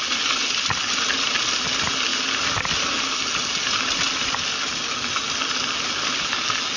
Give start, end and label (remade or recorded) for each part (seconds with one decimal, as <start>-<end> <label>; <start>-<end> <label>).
0.0-6.8 recorded